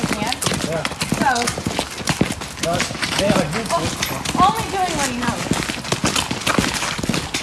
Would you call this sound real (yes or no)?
yes